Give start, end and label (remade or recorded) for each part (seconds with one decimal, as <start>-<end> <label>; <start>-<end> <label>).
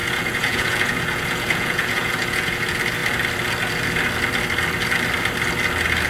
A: 0.0-2.6 remade; 2.6-6.1 recorded